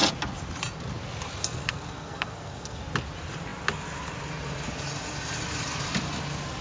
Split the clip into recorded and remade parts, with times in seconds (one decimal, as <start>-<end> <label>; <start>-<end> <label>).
0.0-1.4 recorded; 1.4-2.8 remade; 2.8-6.6 recorded